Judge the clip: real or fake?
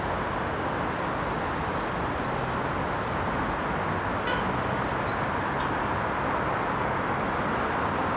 real